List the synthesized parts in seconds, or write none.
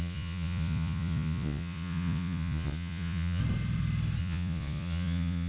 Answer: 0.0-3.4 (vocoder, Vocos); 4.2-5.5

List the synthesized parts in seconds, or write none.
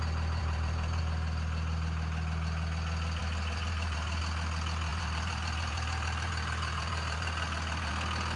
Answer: 0.4-1.0 (vocoder, BigVGAN v2); 3.2-4.2; 4.9-7.9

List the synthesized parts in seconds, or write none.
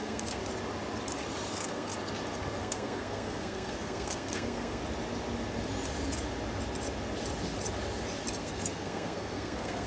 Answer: 0.0-0.4 (codec, SNAC); 1.5-1.9; 2.6-4.8; 8.4-9.9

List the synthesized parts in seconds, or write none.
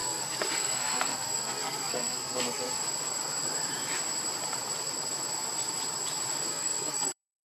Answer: 0.0-2.8 (codec, SNAC); 6.5-7.5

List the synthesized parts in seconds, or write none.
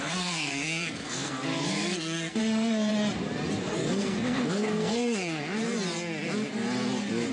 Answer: 0.0-2.9 (codec, SNAC); 3.6-5.6